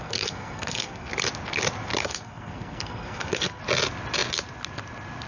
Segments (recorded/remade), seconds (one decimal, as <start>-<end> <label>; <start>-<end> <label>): 0.0-1.1 remade; 1.1-2.0 recorded; 2.0-3.6 remade; 3.6-5.3 recorded